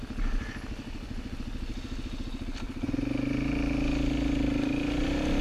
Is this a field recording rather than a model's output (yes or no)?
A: yes